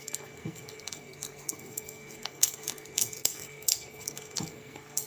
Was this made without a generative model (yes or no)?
no